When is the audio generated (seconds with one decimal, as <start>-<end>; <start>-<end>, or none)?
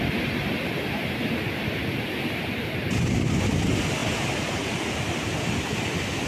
none